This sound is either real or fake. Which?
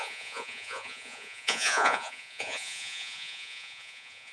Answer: fake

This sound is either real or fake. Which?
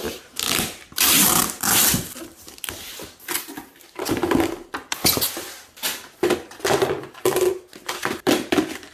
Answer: real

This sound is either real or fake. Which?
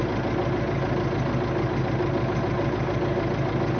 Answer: real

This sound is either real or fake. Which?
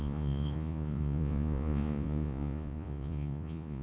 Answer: fake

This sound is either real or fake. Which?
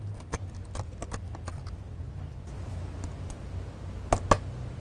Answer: real